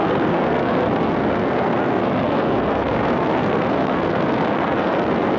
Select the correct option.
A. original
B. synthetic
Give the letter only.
B